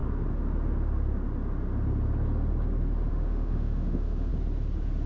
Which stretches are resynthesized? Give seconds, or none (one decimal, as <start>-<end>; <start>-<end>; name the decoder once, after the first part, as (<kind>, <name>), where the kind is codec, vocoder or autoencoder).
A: 3.1-4.3 (autoencoder, DAC-VAE)